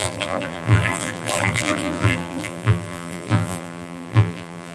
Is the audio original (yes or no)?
no